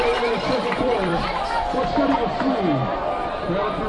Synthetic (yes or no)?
yes